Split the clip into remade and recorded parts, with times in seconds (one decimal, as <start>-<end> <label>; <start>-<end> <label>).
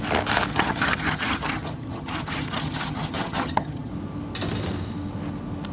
0.0-0.5 recorded; 0.5-3.9 remade; 3.9-5.7 recorded